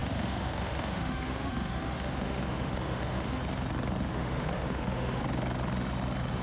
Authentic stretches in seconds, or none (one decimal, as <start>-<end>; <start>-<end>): 3.4-4.1; 5.2-6.4